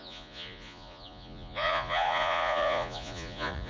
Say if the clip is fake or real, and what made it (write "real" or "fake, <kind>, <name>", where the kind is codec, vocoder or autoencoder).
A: fake, vocoder, Vocos